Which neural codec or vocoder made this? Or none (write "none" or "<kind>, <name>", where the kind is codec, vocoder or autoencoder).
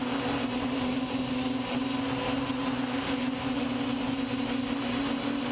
none